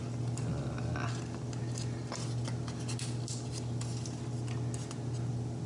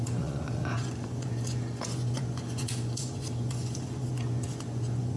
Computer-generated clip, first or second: second